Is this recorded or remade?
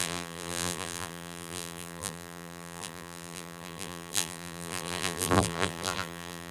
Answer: remade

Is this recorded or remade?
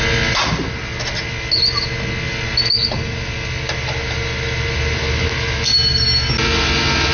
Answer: recorded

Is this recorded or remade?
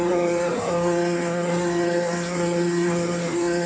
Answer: remade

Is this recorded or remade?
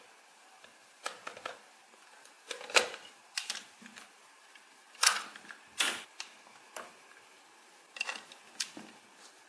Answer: recorded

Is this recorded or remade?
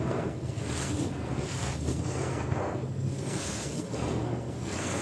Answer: remade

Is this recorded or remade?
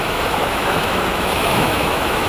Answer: remade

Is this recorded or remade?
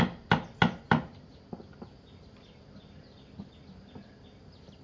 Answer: recorded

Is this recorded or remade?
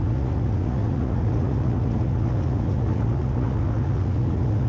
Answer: remade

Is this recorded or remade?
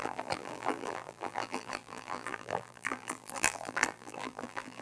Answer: remade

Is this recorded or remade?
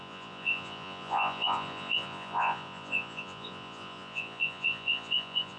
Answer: remade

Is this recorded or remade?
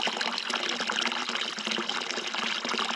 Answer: recorded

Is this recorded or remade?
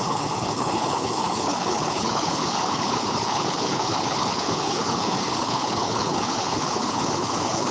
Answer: remade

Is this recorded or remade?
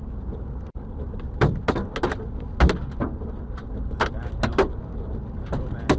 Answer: recorded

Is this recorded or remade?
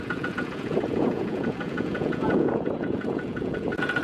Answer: remade